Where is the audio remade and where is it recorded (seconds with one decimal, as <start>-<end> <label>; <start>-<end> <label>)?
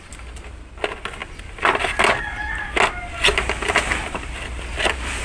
0.0-5.2 recorded